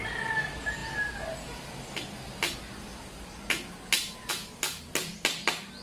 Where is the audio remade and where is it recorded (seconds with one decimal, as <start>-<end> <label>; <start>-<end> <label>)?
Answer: 0.0-5.8 recorded